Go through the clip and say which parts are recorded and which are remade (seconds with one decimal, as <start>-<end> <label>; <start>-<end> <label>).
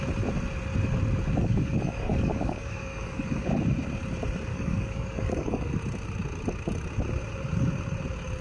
0.0-1.4 recorded; 1.4-3.5 remade; 3.5-4.5 recorded; 4.5-5.7 remade; 5.7-8.4 recorded